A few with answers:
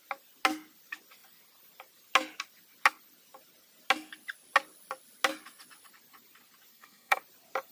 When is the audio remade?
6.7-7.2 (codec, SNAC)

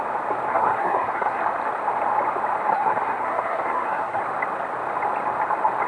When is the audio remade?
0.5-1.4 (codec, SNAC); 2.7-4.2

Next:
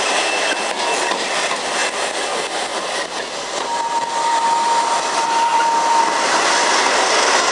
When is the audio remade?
1.8-2.3 (vocoder, BigVGAN v2); 2.7-6.0

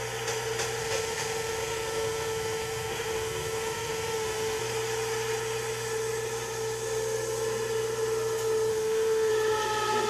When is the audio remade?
0.8-4.6 (autoencoder, DAC-VAE); 8.7-9.3